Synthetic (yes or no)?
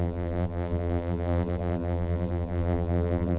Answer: yes